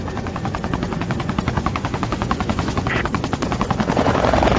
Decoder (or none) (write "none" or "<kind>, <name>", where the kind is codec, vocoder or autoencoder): vocoder, Vocos